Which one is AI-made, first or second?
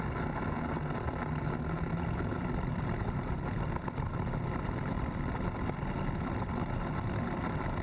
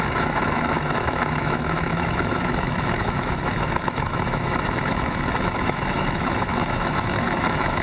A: second